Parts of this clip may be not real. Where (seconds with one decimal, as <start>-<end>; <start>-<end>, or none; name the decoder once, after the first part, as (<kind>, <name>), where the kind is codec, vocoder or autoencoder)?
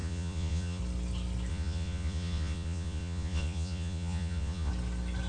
0.0-0.8 (vocoder, Vocos); 1.5-4.7